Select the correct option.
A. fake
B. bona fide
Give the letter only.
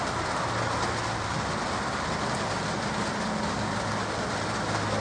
B